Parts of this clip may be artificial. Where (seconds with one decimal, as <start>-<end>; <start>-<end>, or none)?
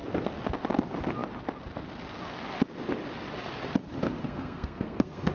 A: 4.2-5.3